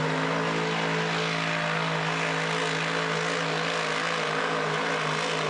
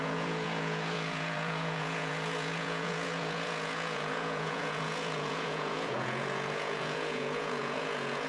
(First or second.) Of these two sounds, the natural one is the first